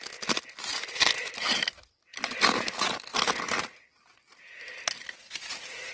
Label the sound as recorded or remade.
recorded